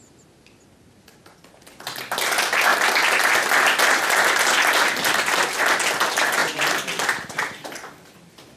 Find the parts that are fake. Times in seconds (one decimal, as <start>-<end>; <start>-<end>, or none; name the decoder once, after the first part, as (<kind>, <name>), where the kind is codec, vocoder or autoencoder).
none